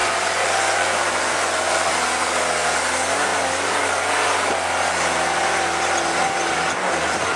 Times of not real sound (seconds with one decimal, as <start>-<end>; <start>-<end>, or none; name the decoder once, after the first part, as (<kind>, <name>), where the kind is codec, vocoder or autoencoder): 0.0-1.9 (vocoder, Vocos)

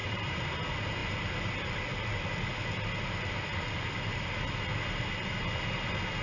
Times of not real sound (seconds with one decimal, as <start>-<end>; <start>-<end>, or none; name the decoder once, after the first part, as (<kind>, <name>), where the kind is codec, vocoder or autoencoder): 0.0-0.6 (vocoder, BigVGAN v2)